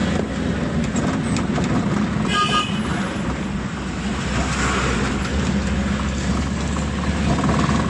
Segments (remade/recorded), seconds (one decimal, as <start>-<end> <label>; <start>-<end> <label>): 0.0-7.9 recorded

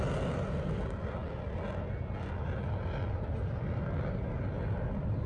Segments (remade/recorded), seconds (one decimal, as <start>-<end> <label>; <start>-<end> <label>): 0.0-5.3 recorded